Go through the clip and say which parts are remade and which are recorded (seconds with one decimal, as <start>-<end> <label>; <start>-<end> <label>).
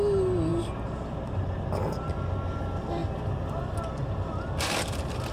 0.0-5.3 recorded